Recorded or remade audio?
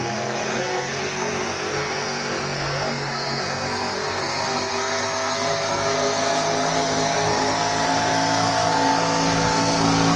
remade